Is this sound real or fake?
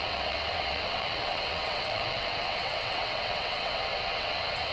fake